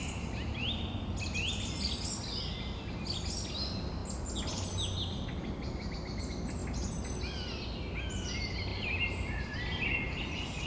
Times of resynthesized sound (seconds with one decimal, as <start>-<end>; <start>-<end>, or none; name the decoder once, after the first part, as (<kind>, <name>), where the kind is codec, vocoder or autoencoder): 8.7-9.6 (vocoder, BigVGAN v2)